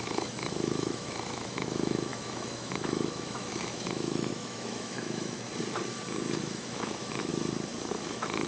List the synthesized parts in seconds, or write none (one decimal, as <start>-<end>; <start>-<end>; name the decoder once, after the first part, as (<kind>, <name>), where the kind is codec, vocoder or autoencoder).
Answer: 0.0-5.5 (autoencoder, DAC-VAE); 6.4-7.3; 7.9-8.5